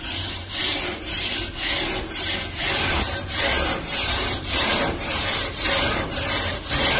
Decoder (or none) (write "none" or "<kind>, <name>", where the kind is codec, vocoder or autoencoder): vocoder, BigVGAN v2